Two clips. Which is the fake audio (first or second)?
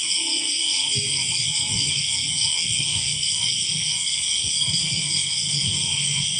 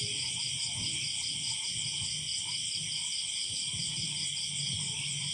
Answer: first